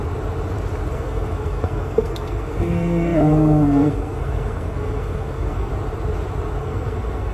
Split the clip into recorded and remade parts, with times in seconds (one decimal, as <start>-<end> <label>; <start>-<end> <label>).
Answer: 0.0-0.9 recorded; 0.9-5.7 remade; 5.7-6.6 recorded; 6.6-7.3 remade